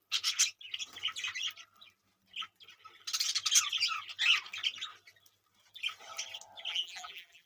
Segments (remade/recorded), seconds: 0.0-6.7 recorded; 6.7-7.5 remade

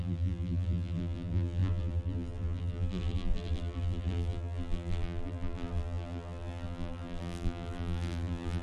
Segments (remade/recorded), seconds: 0.0-8.6 remade